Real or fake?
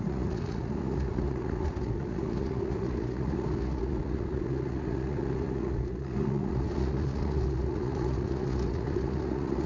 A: fake